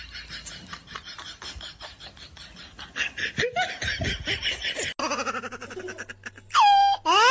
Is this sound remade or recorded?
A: recorded